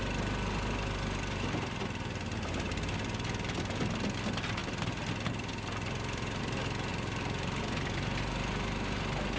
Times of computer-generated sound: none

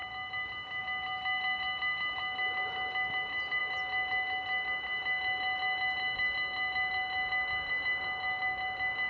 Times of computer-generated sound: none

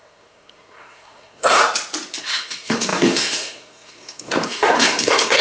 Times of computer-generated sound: 0.0-1.6; 2.2-5.4

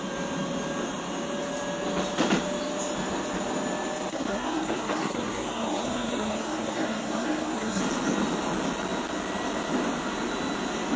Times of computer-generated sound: 4.1-7.8

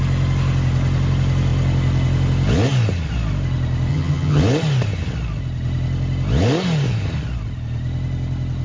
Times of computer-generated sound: 3.9-4.4